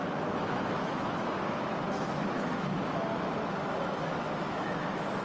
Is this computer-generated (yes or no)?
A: yes